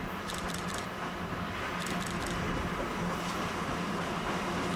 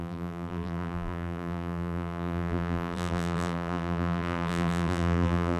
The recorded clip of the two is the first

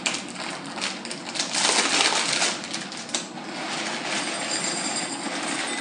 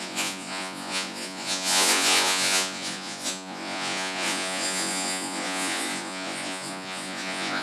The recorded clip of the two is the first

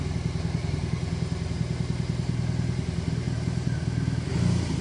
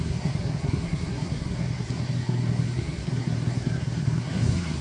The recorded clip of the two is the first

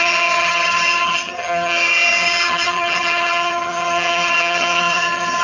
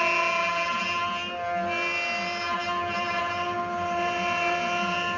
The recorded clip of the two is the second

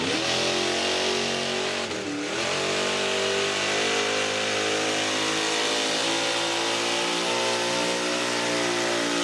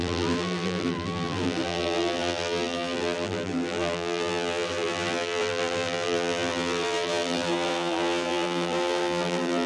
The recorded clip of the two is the first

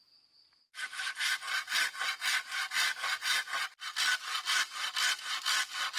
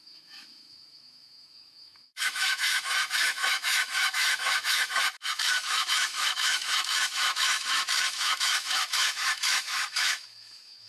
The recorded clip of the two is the first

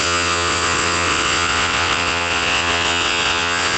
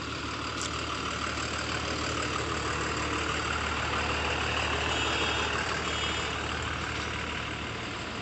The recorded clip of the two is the second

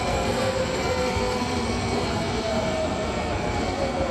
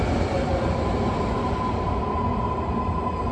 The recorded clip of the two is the second